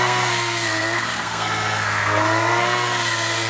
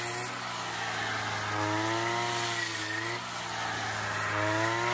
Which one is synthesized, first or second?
first